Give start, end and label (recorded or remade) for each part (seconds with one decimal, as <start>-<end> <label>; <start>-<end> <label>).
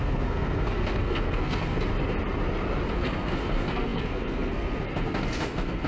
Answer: 0.0-1.9 remade; 1.9-2.9 recorded; 2.9-5.9 remade